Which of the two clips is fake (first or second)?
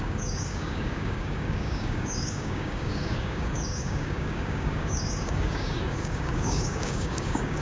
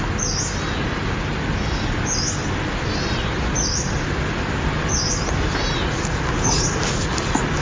first